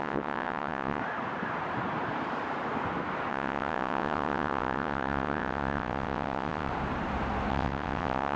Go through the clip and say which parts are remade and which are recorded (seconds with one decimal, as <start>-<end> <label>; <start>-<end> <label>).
0.0-1.0 remade; 1.0-3.3 recorded; 3.3-6.7 remade; 6.7-7.5 recorded; 7.5-8.4 remade

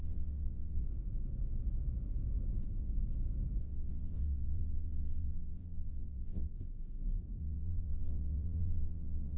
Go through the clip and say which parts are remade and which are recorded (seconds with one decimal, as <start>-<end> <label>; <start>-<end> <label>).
0.0-0.8 remade; 0.8-3.6 recorded; 3.6-6.5 remade; 6.5-7.4 recorded; 7.4-9.4 remade

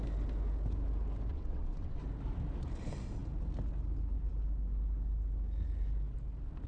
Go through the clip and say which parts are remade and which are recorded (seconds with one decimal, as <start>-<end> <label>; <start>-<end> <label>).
0.0-1.3 recorded; 1.3-2.0 remade; 2.0-6.7 recorded

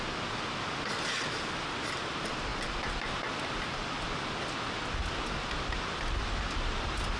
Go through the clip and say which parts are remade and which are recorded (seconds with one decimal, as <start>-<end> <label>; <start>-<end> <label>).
0.0-7.2 recorded